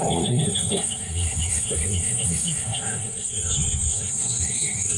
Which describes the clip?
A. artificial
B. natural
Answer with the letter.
A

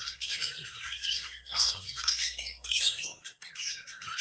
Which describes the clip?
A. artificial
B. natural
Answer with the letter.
A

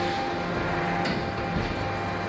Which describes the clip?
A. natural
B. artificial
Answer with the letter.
A